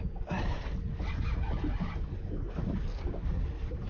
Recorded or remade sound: recorded